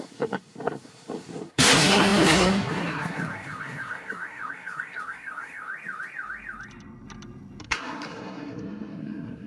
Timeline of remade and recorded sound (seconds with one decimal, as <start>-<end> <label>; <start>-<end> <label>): 0.0-5.7 remade; 5.7-7.6 recorded; 7.6-9.5 remade